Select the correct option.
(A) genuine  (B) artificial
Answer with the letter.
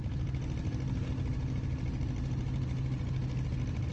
A